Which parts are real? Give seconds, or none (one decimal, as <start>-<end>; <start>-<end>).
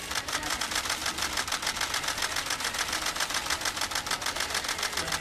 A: 0.6-5.2